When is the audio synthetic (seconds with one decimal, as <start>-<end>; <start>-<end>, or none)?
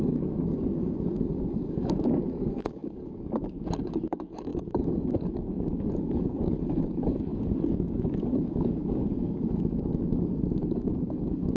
0.0-11.6